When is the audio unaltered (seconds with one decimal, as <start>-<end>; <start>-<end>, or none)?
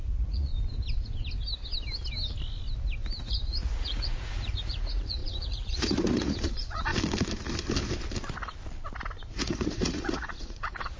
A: 0.5-3.2; 6.9-9.3